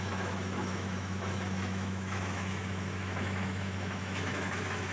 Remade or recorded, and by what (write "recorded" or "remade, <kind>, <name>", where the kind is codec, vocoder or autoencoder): remade, autoencoder, DAC-VAE